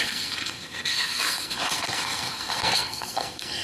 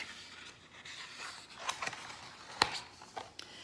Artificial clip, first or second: first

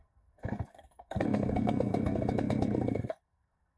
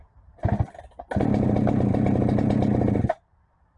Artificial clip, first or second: first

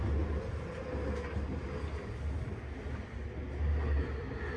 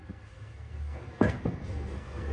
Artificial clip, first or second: second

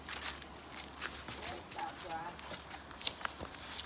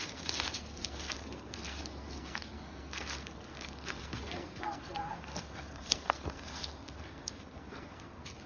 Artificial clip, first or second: second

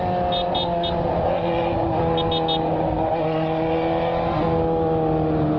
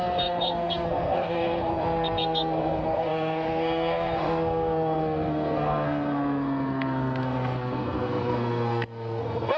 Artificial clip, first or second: second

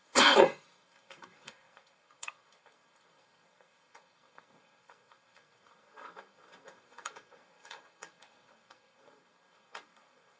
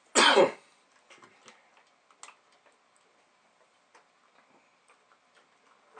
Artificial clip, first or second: first